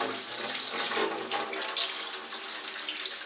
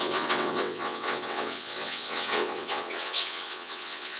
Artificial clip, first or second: second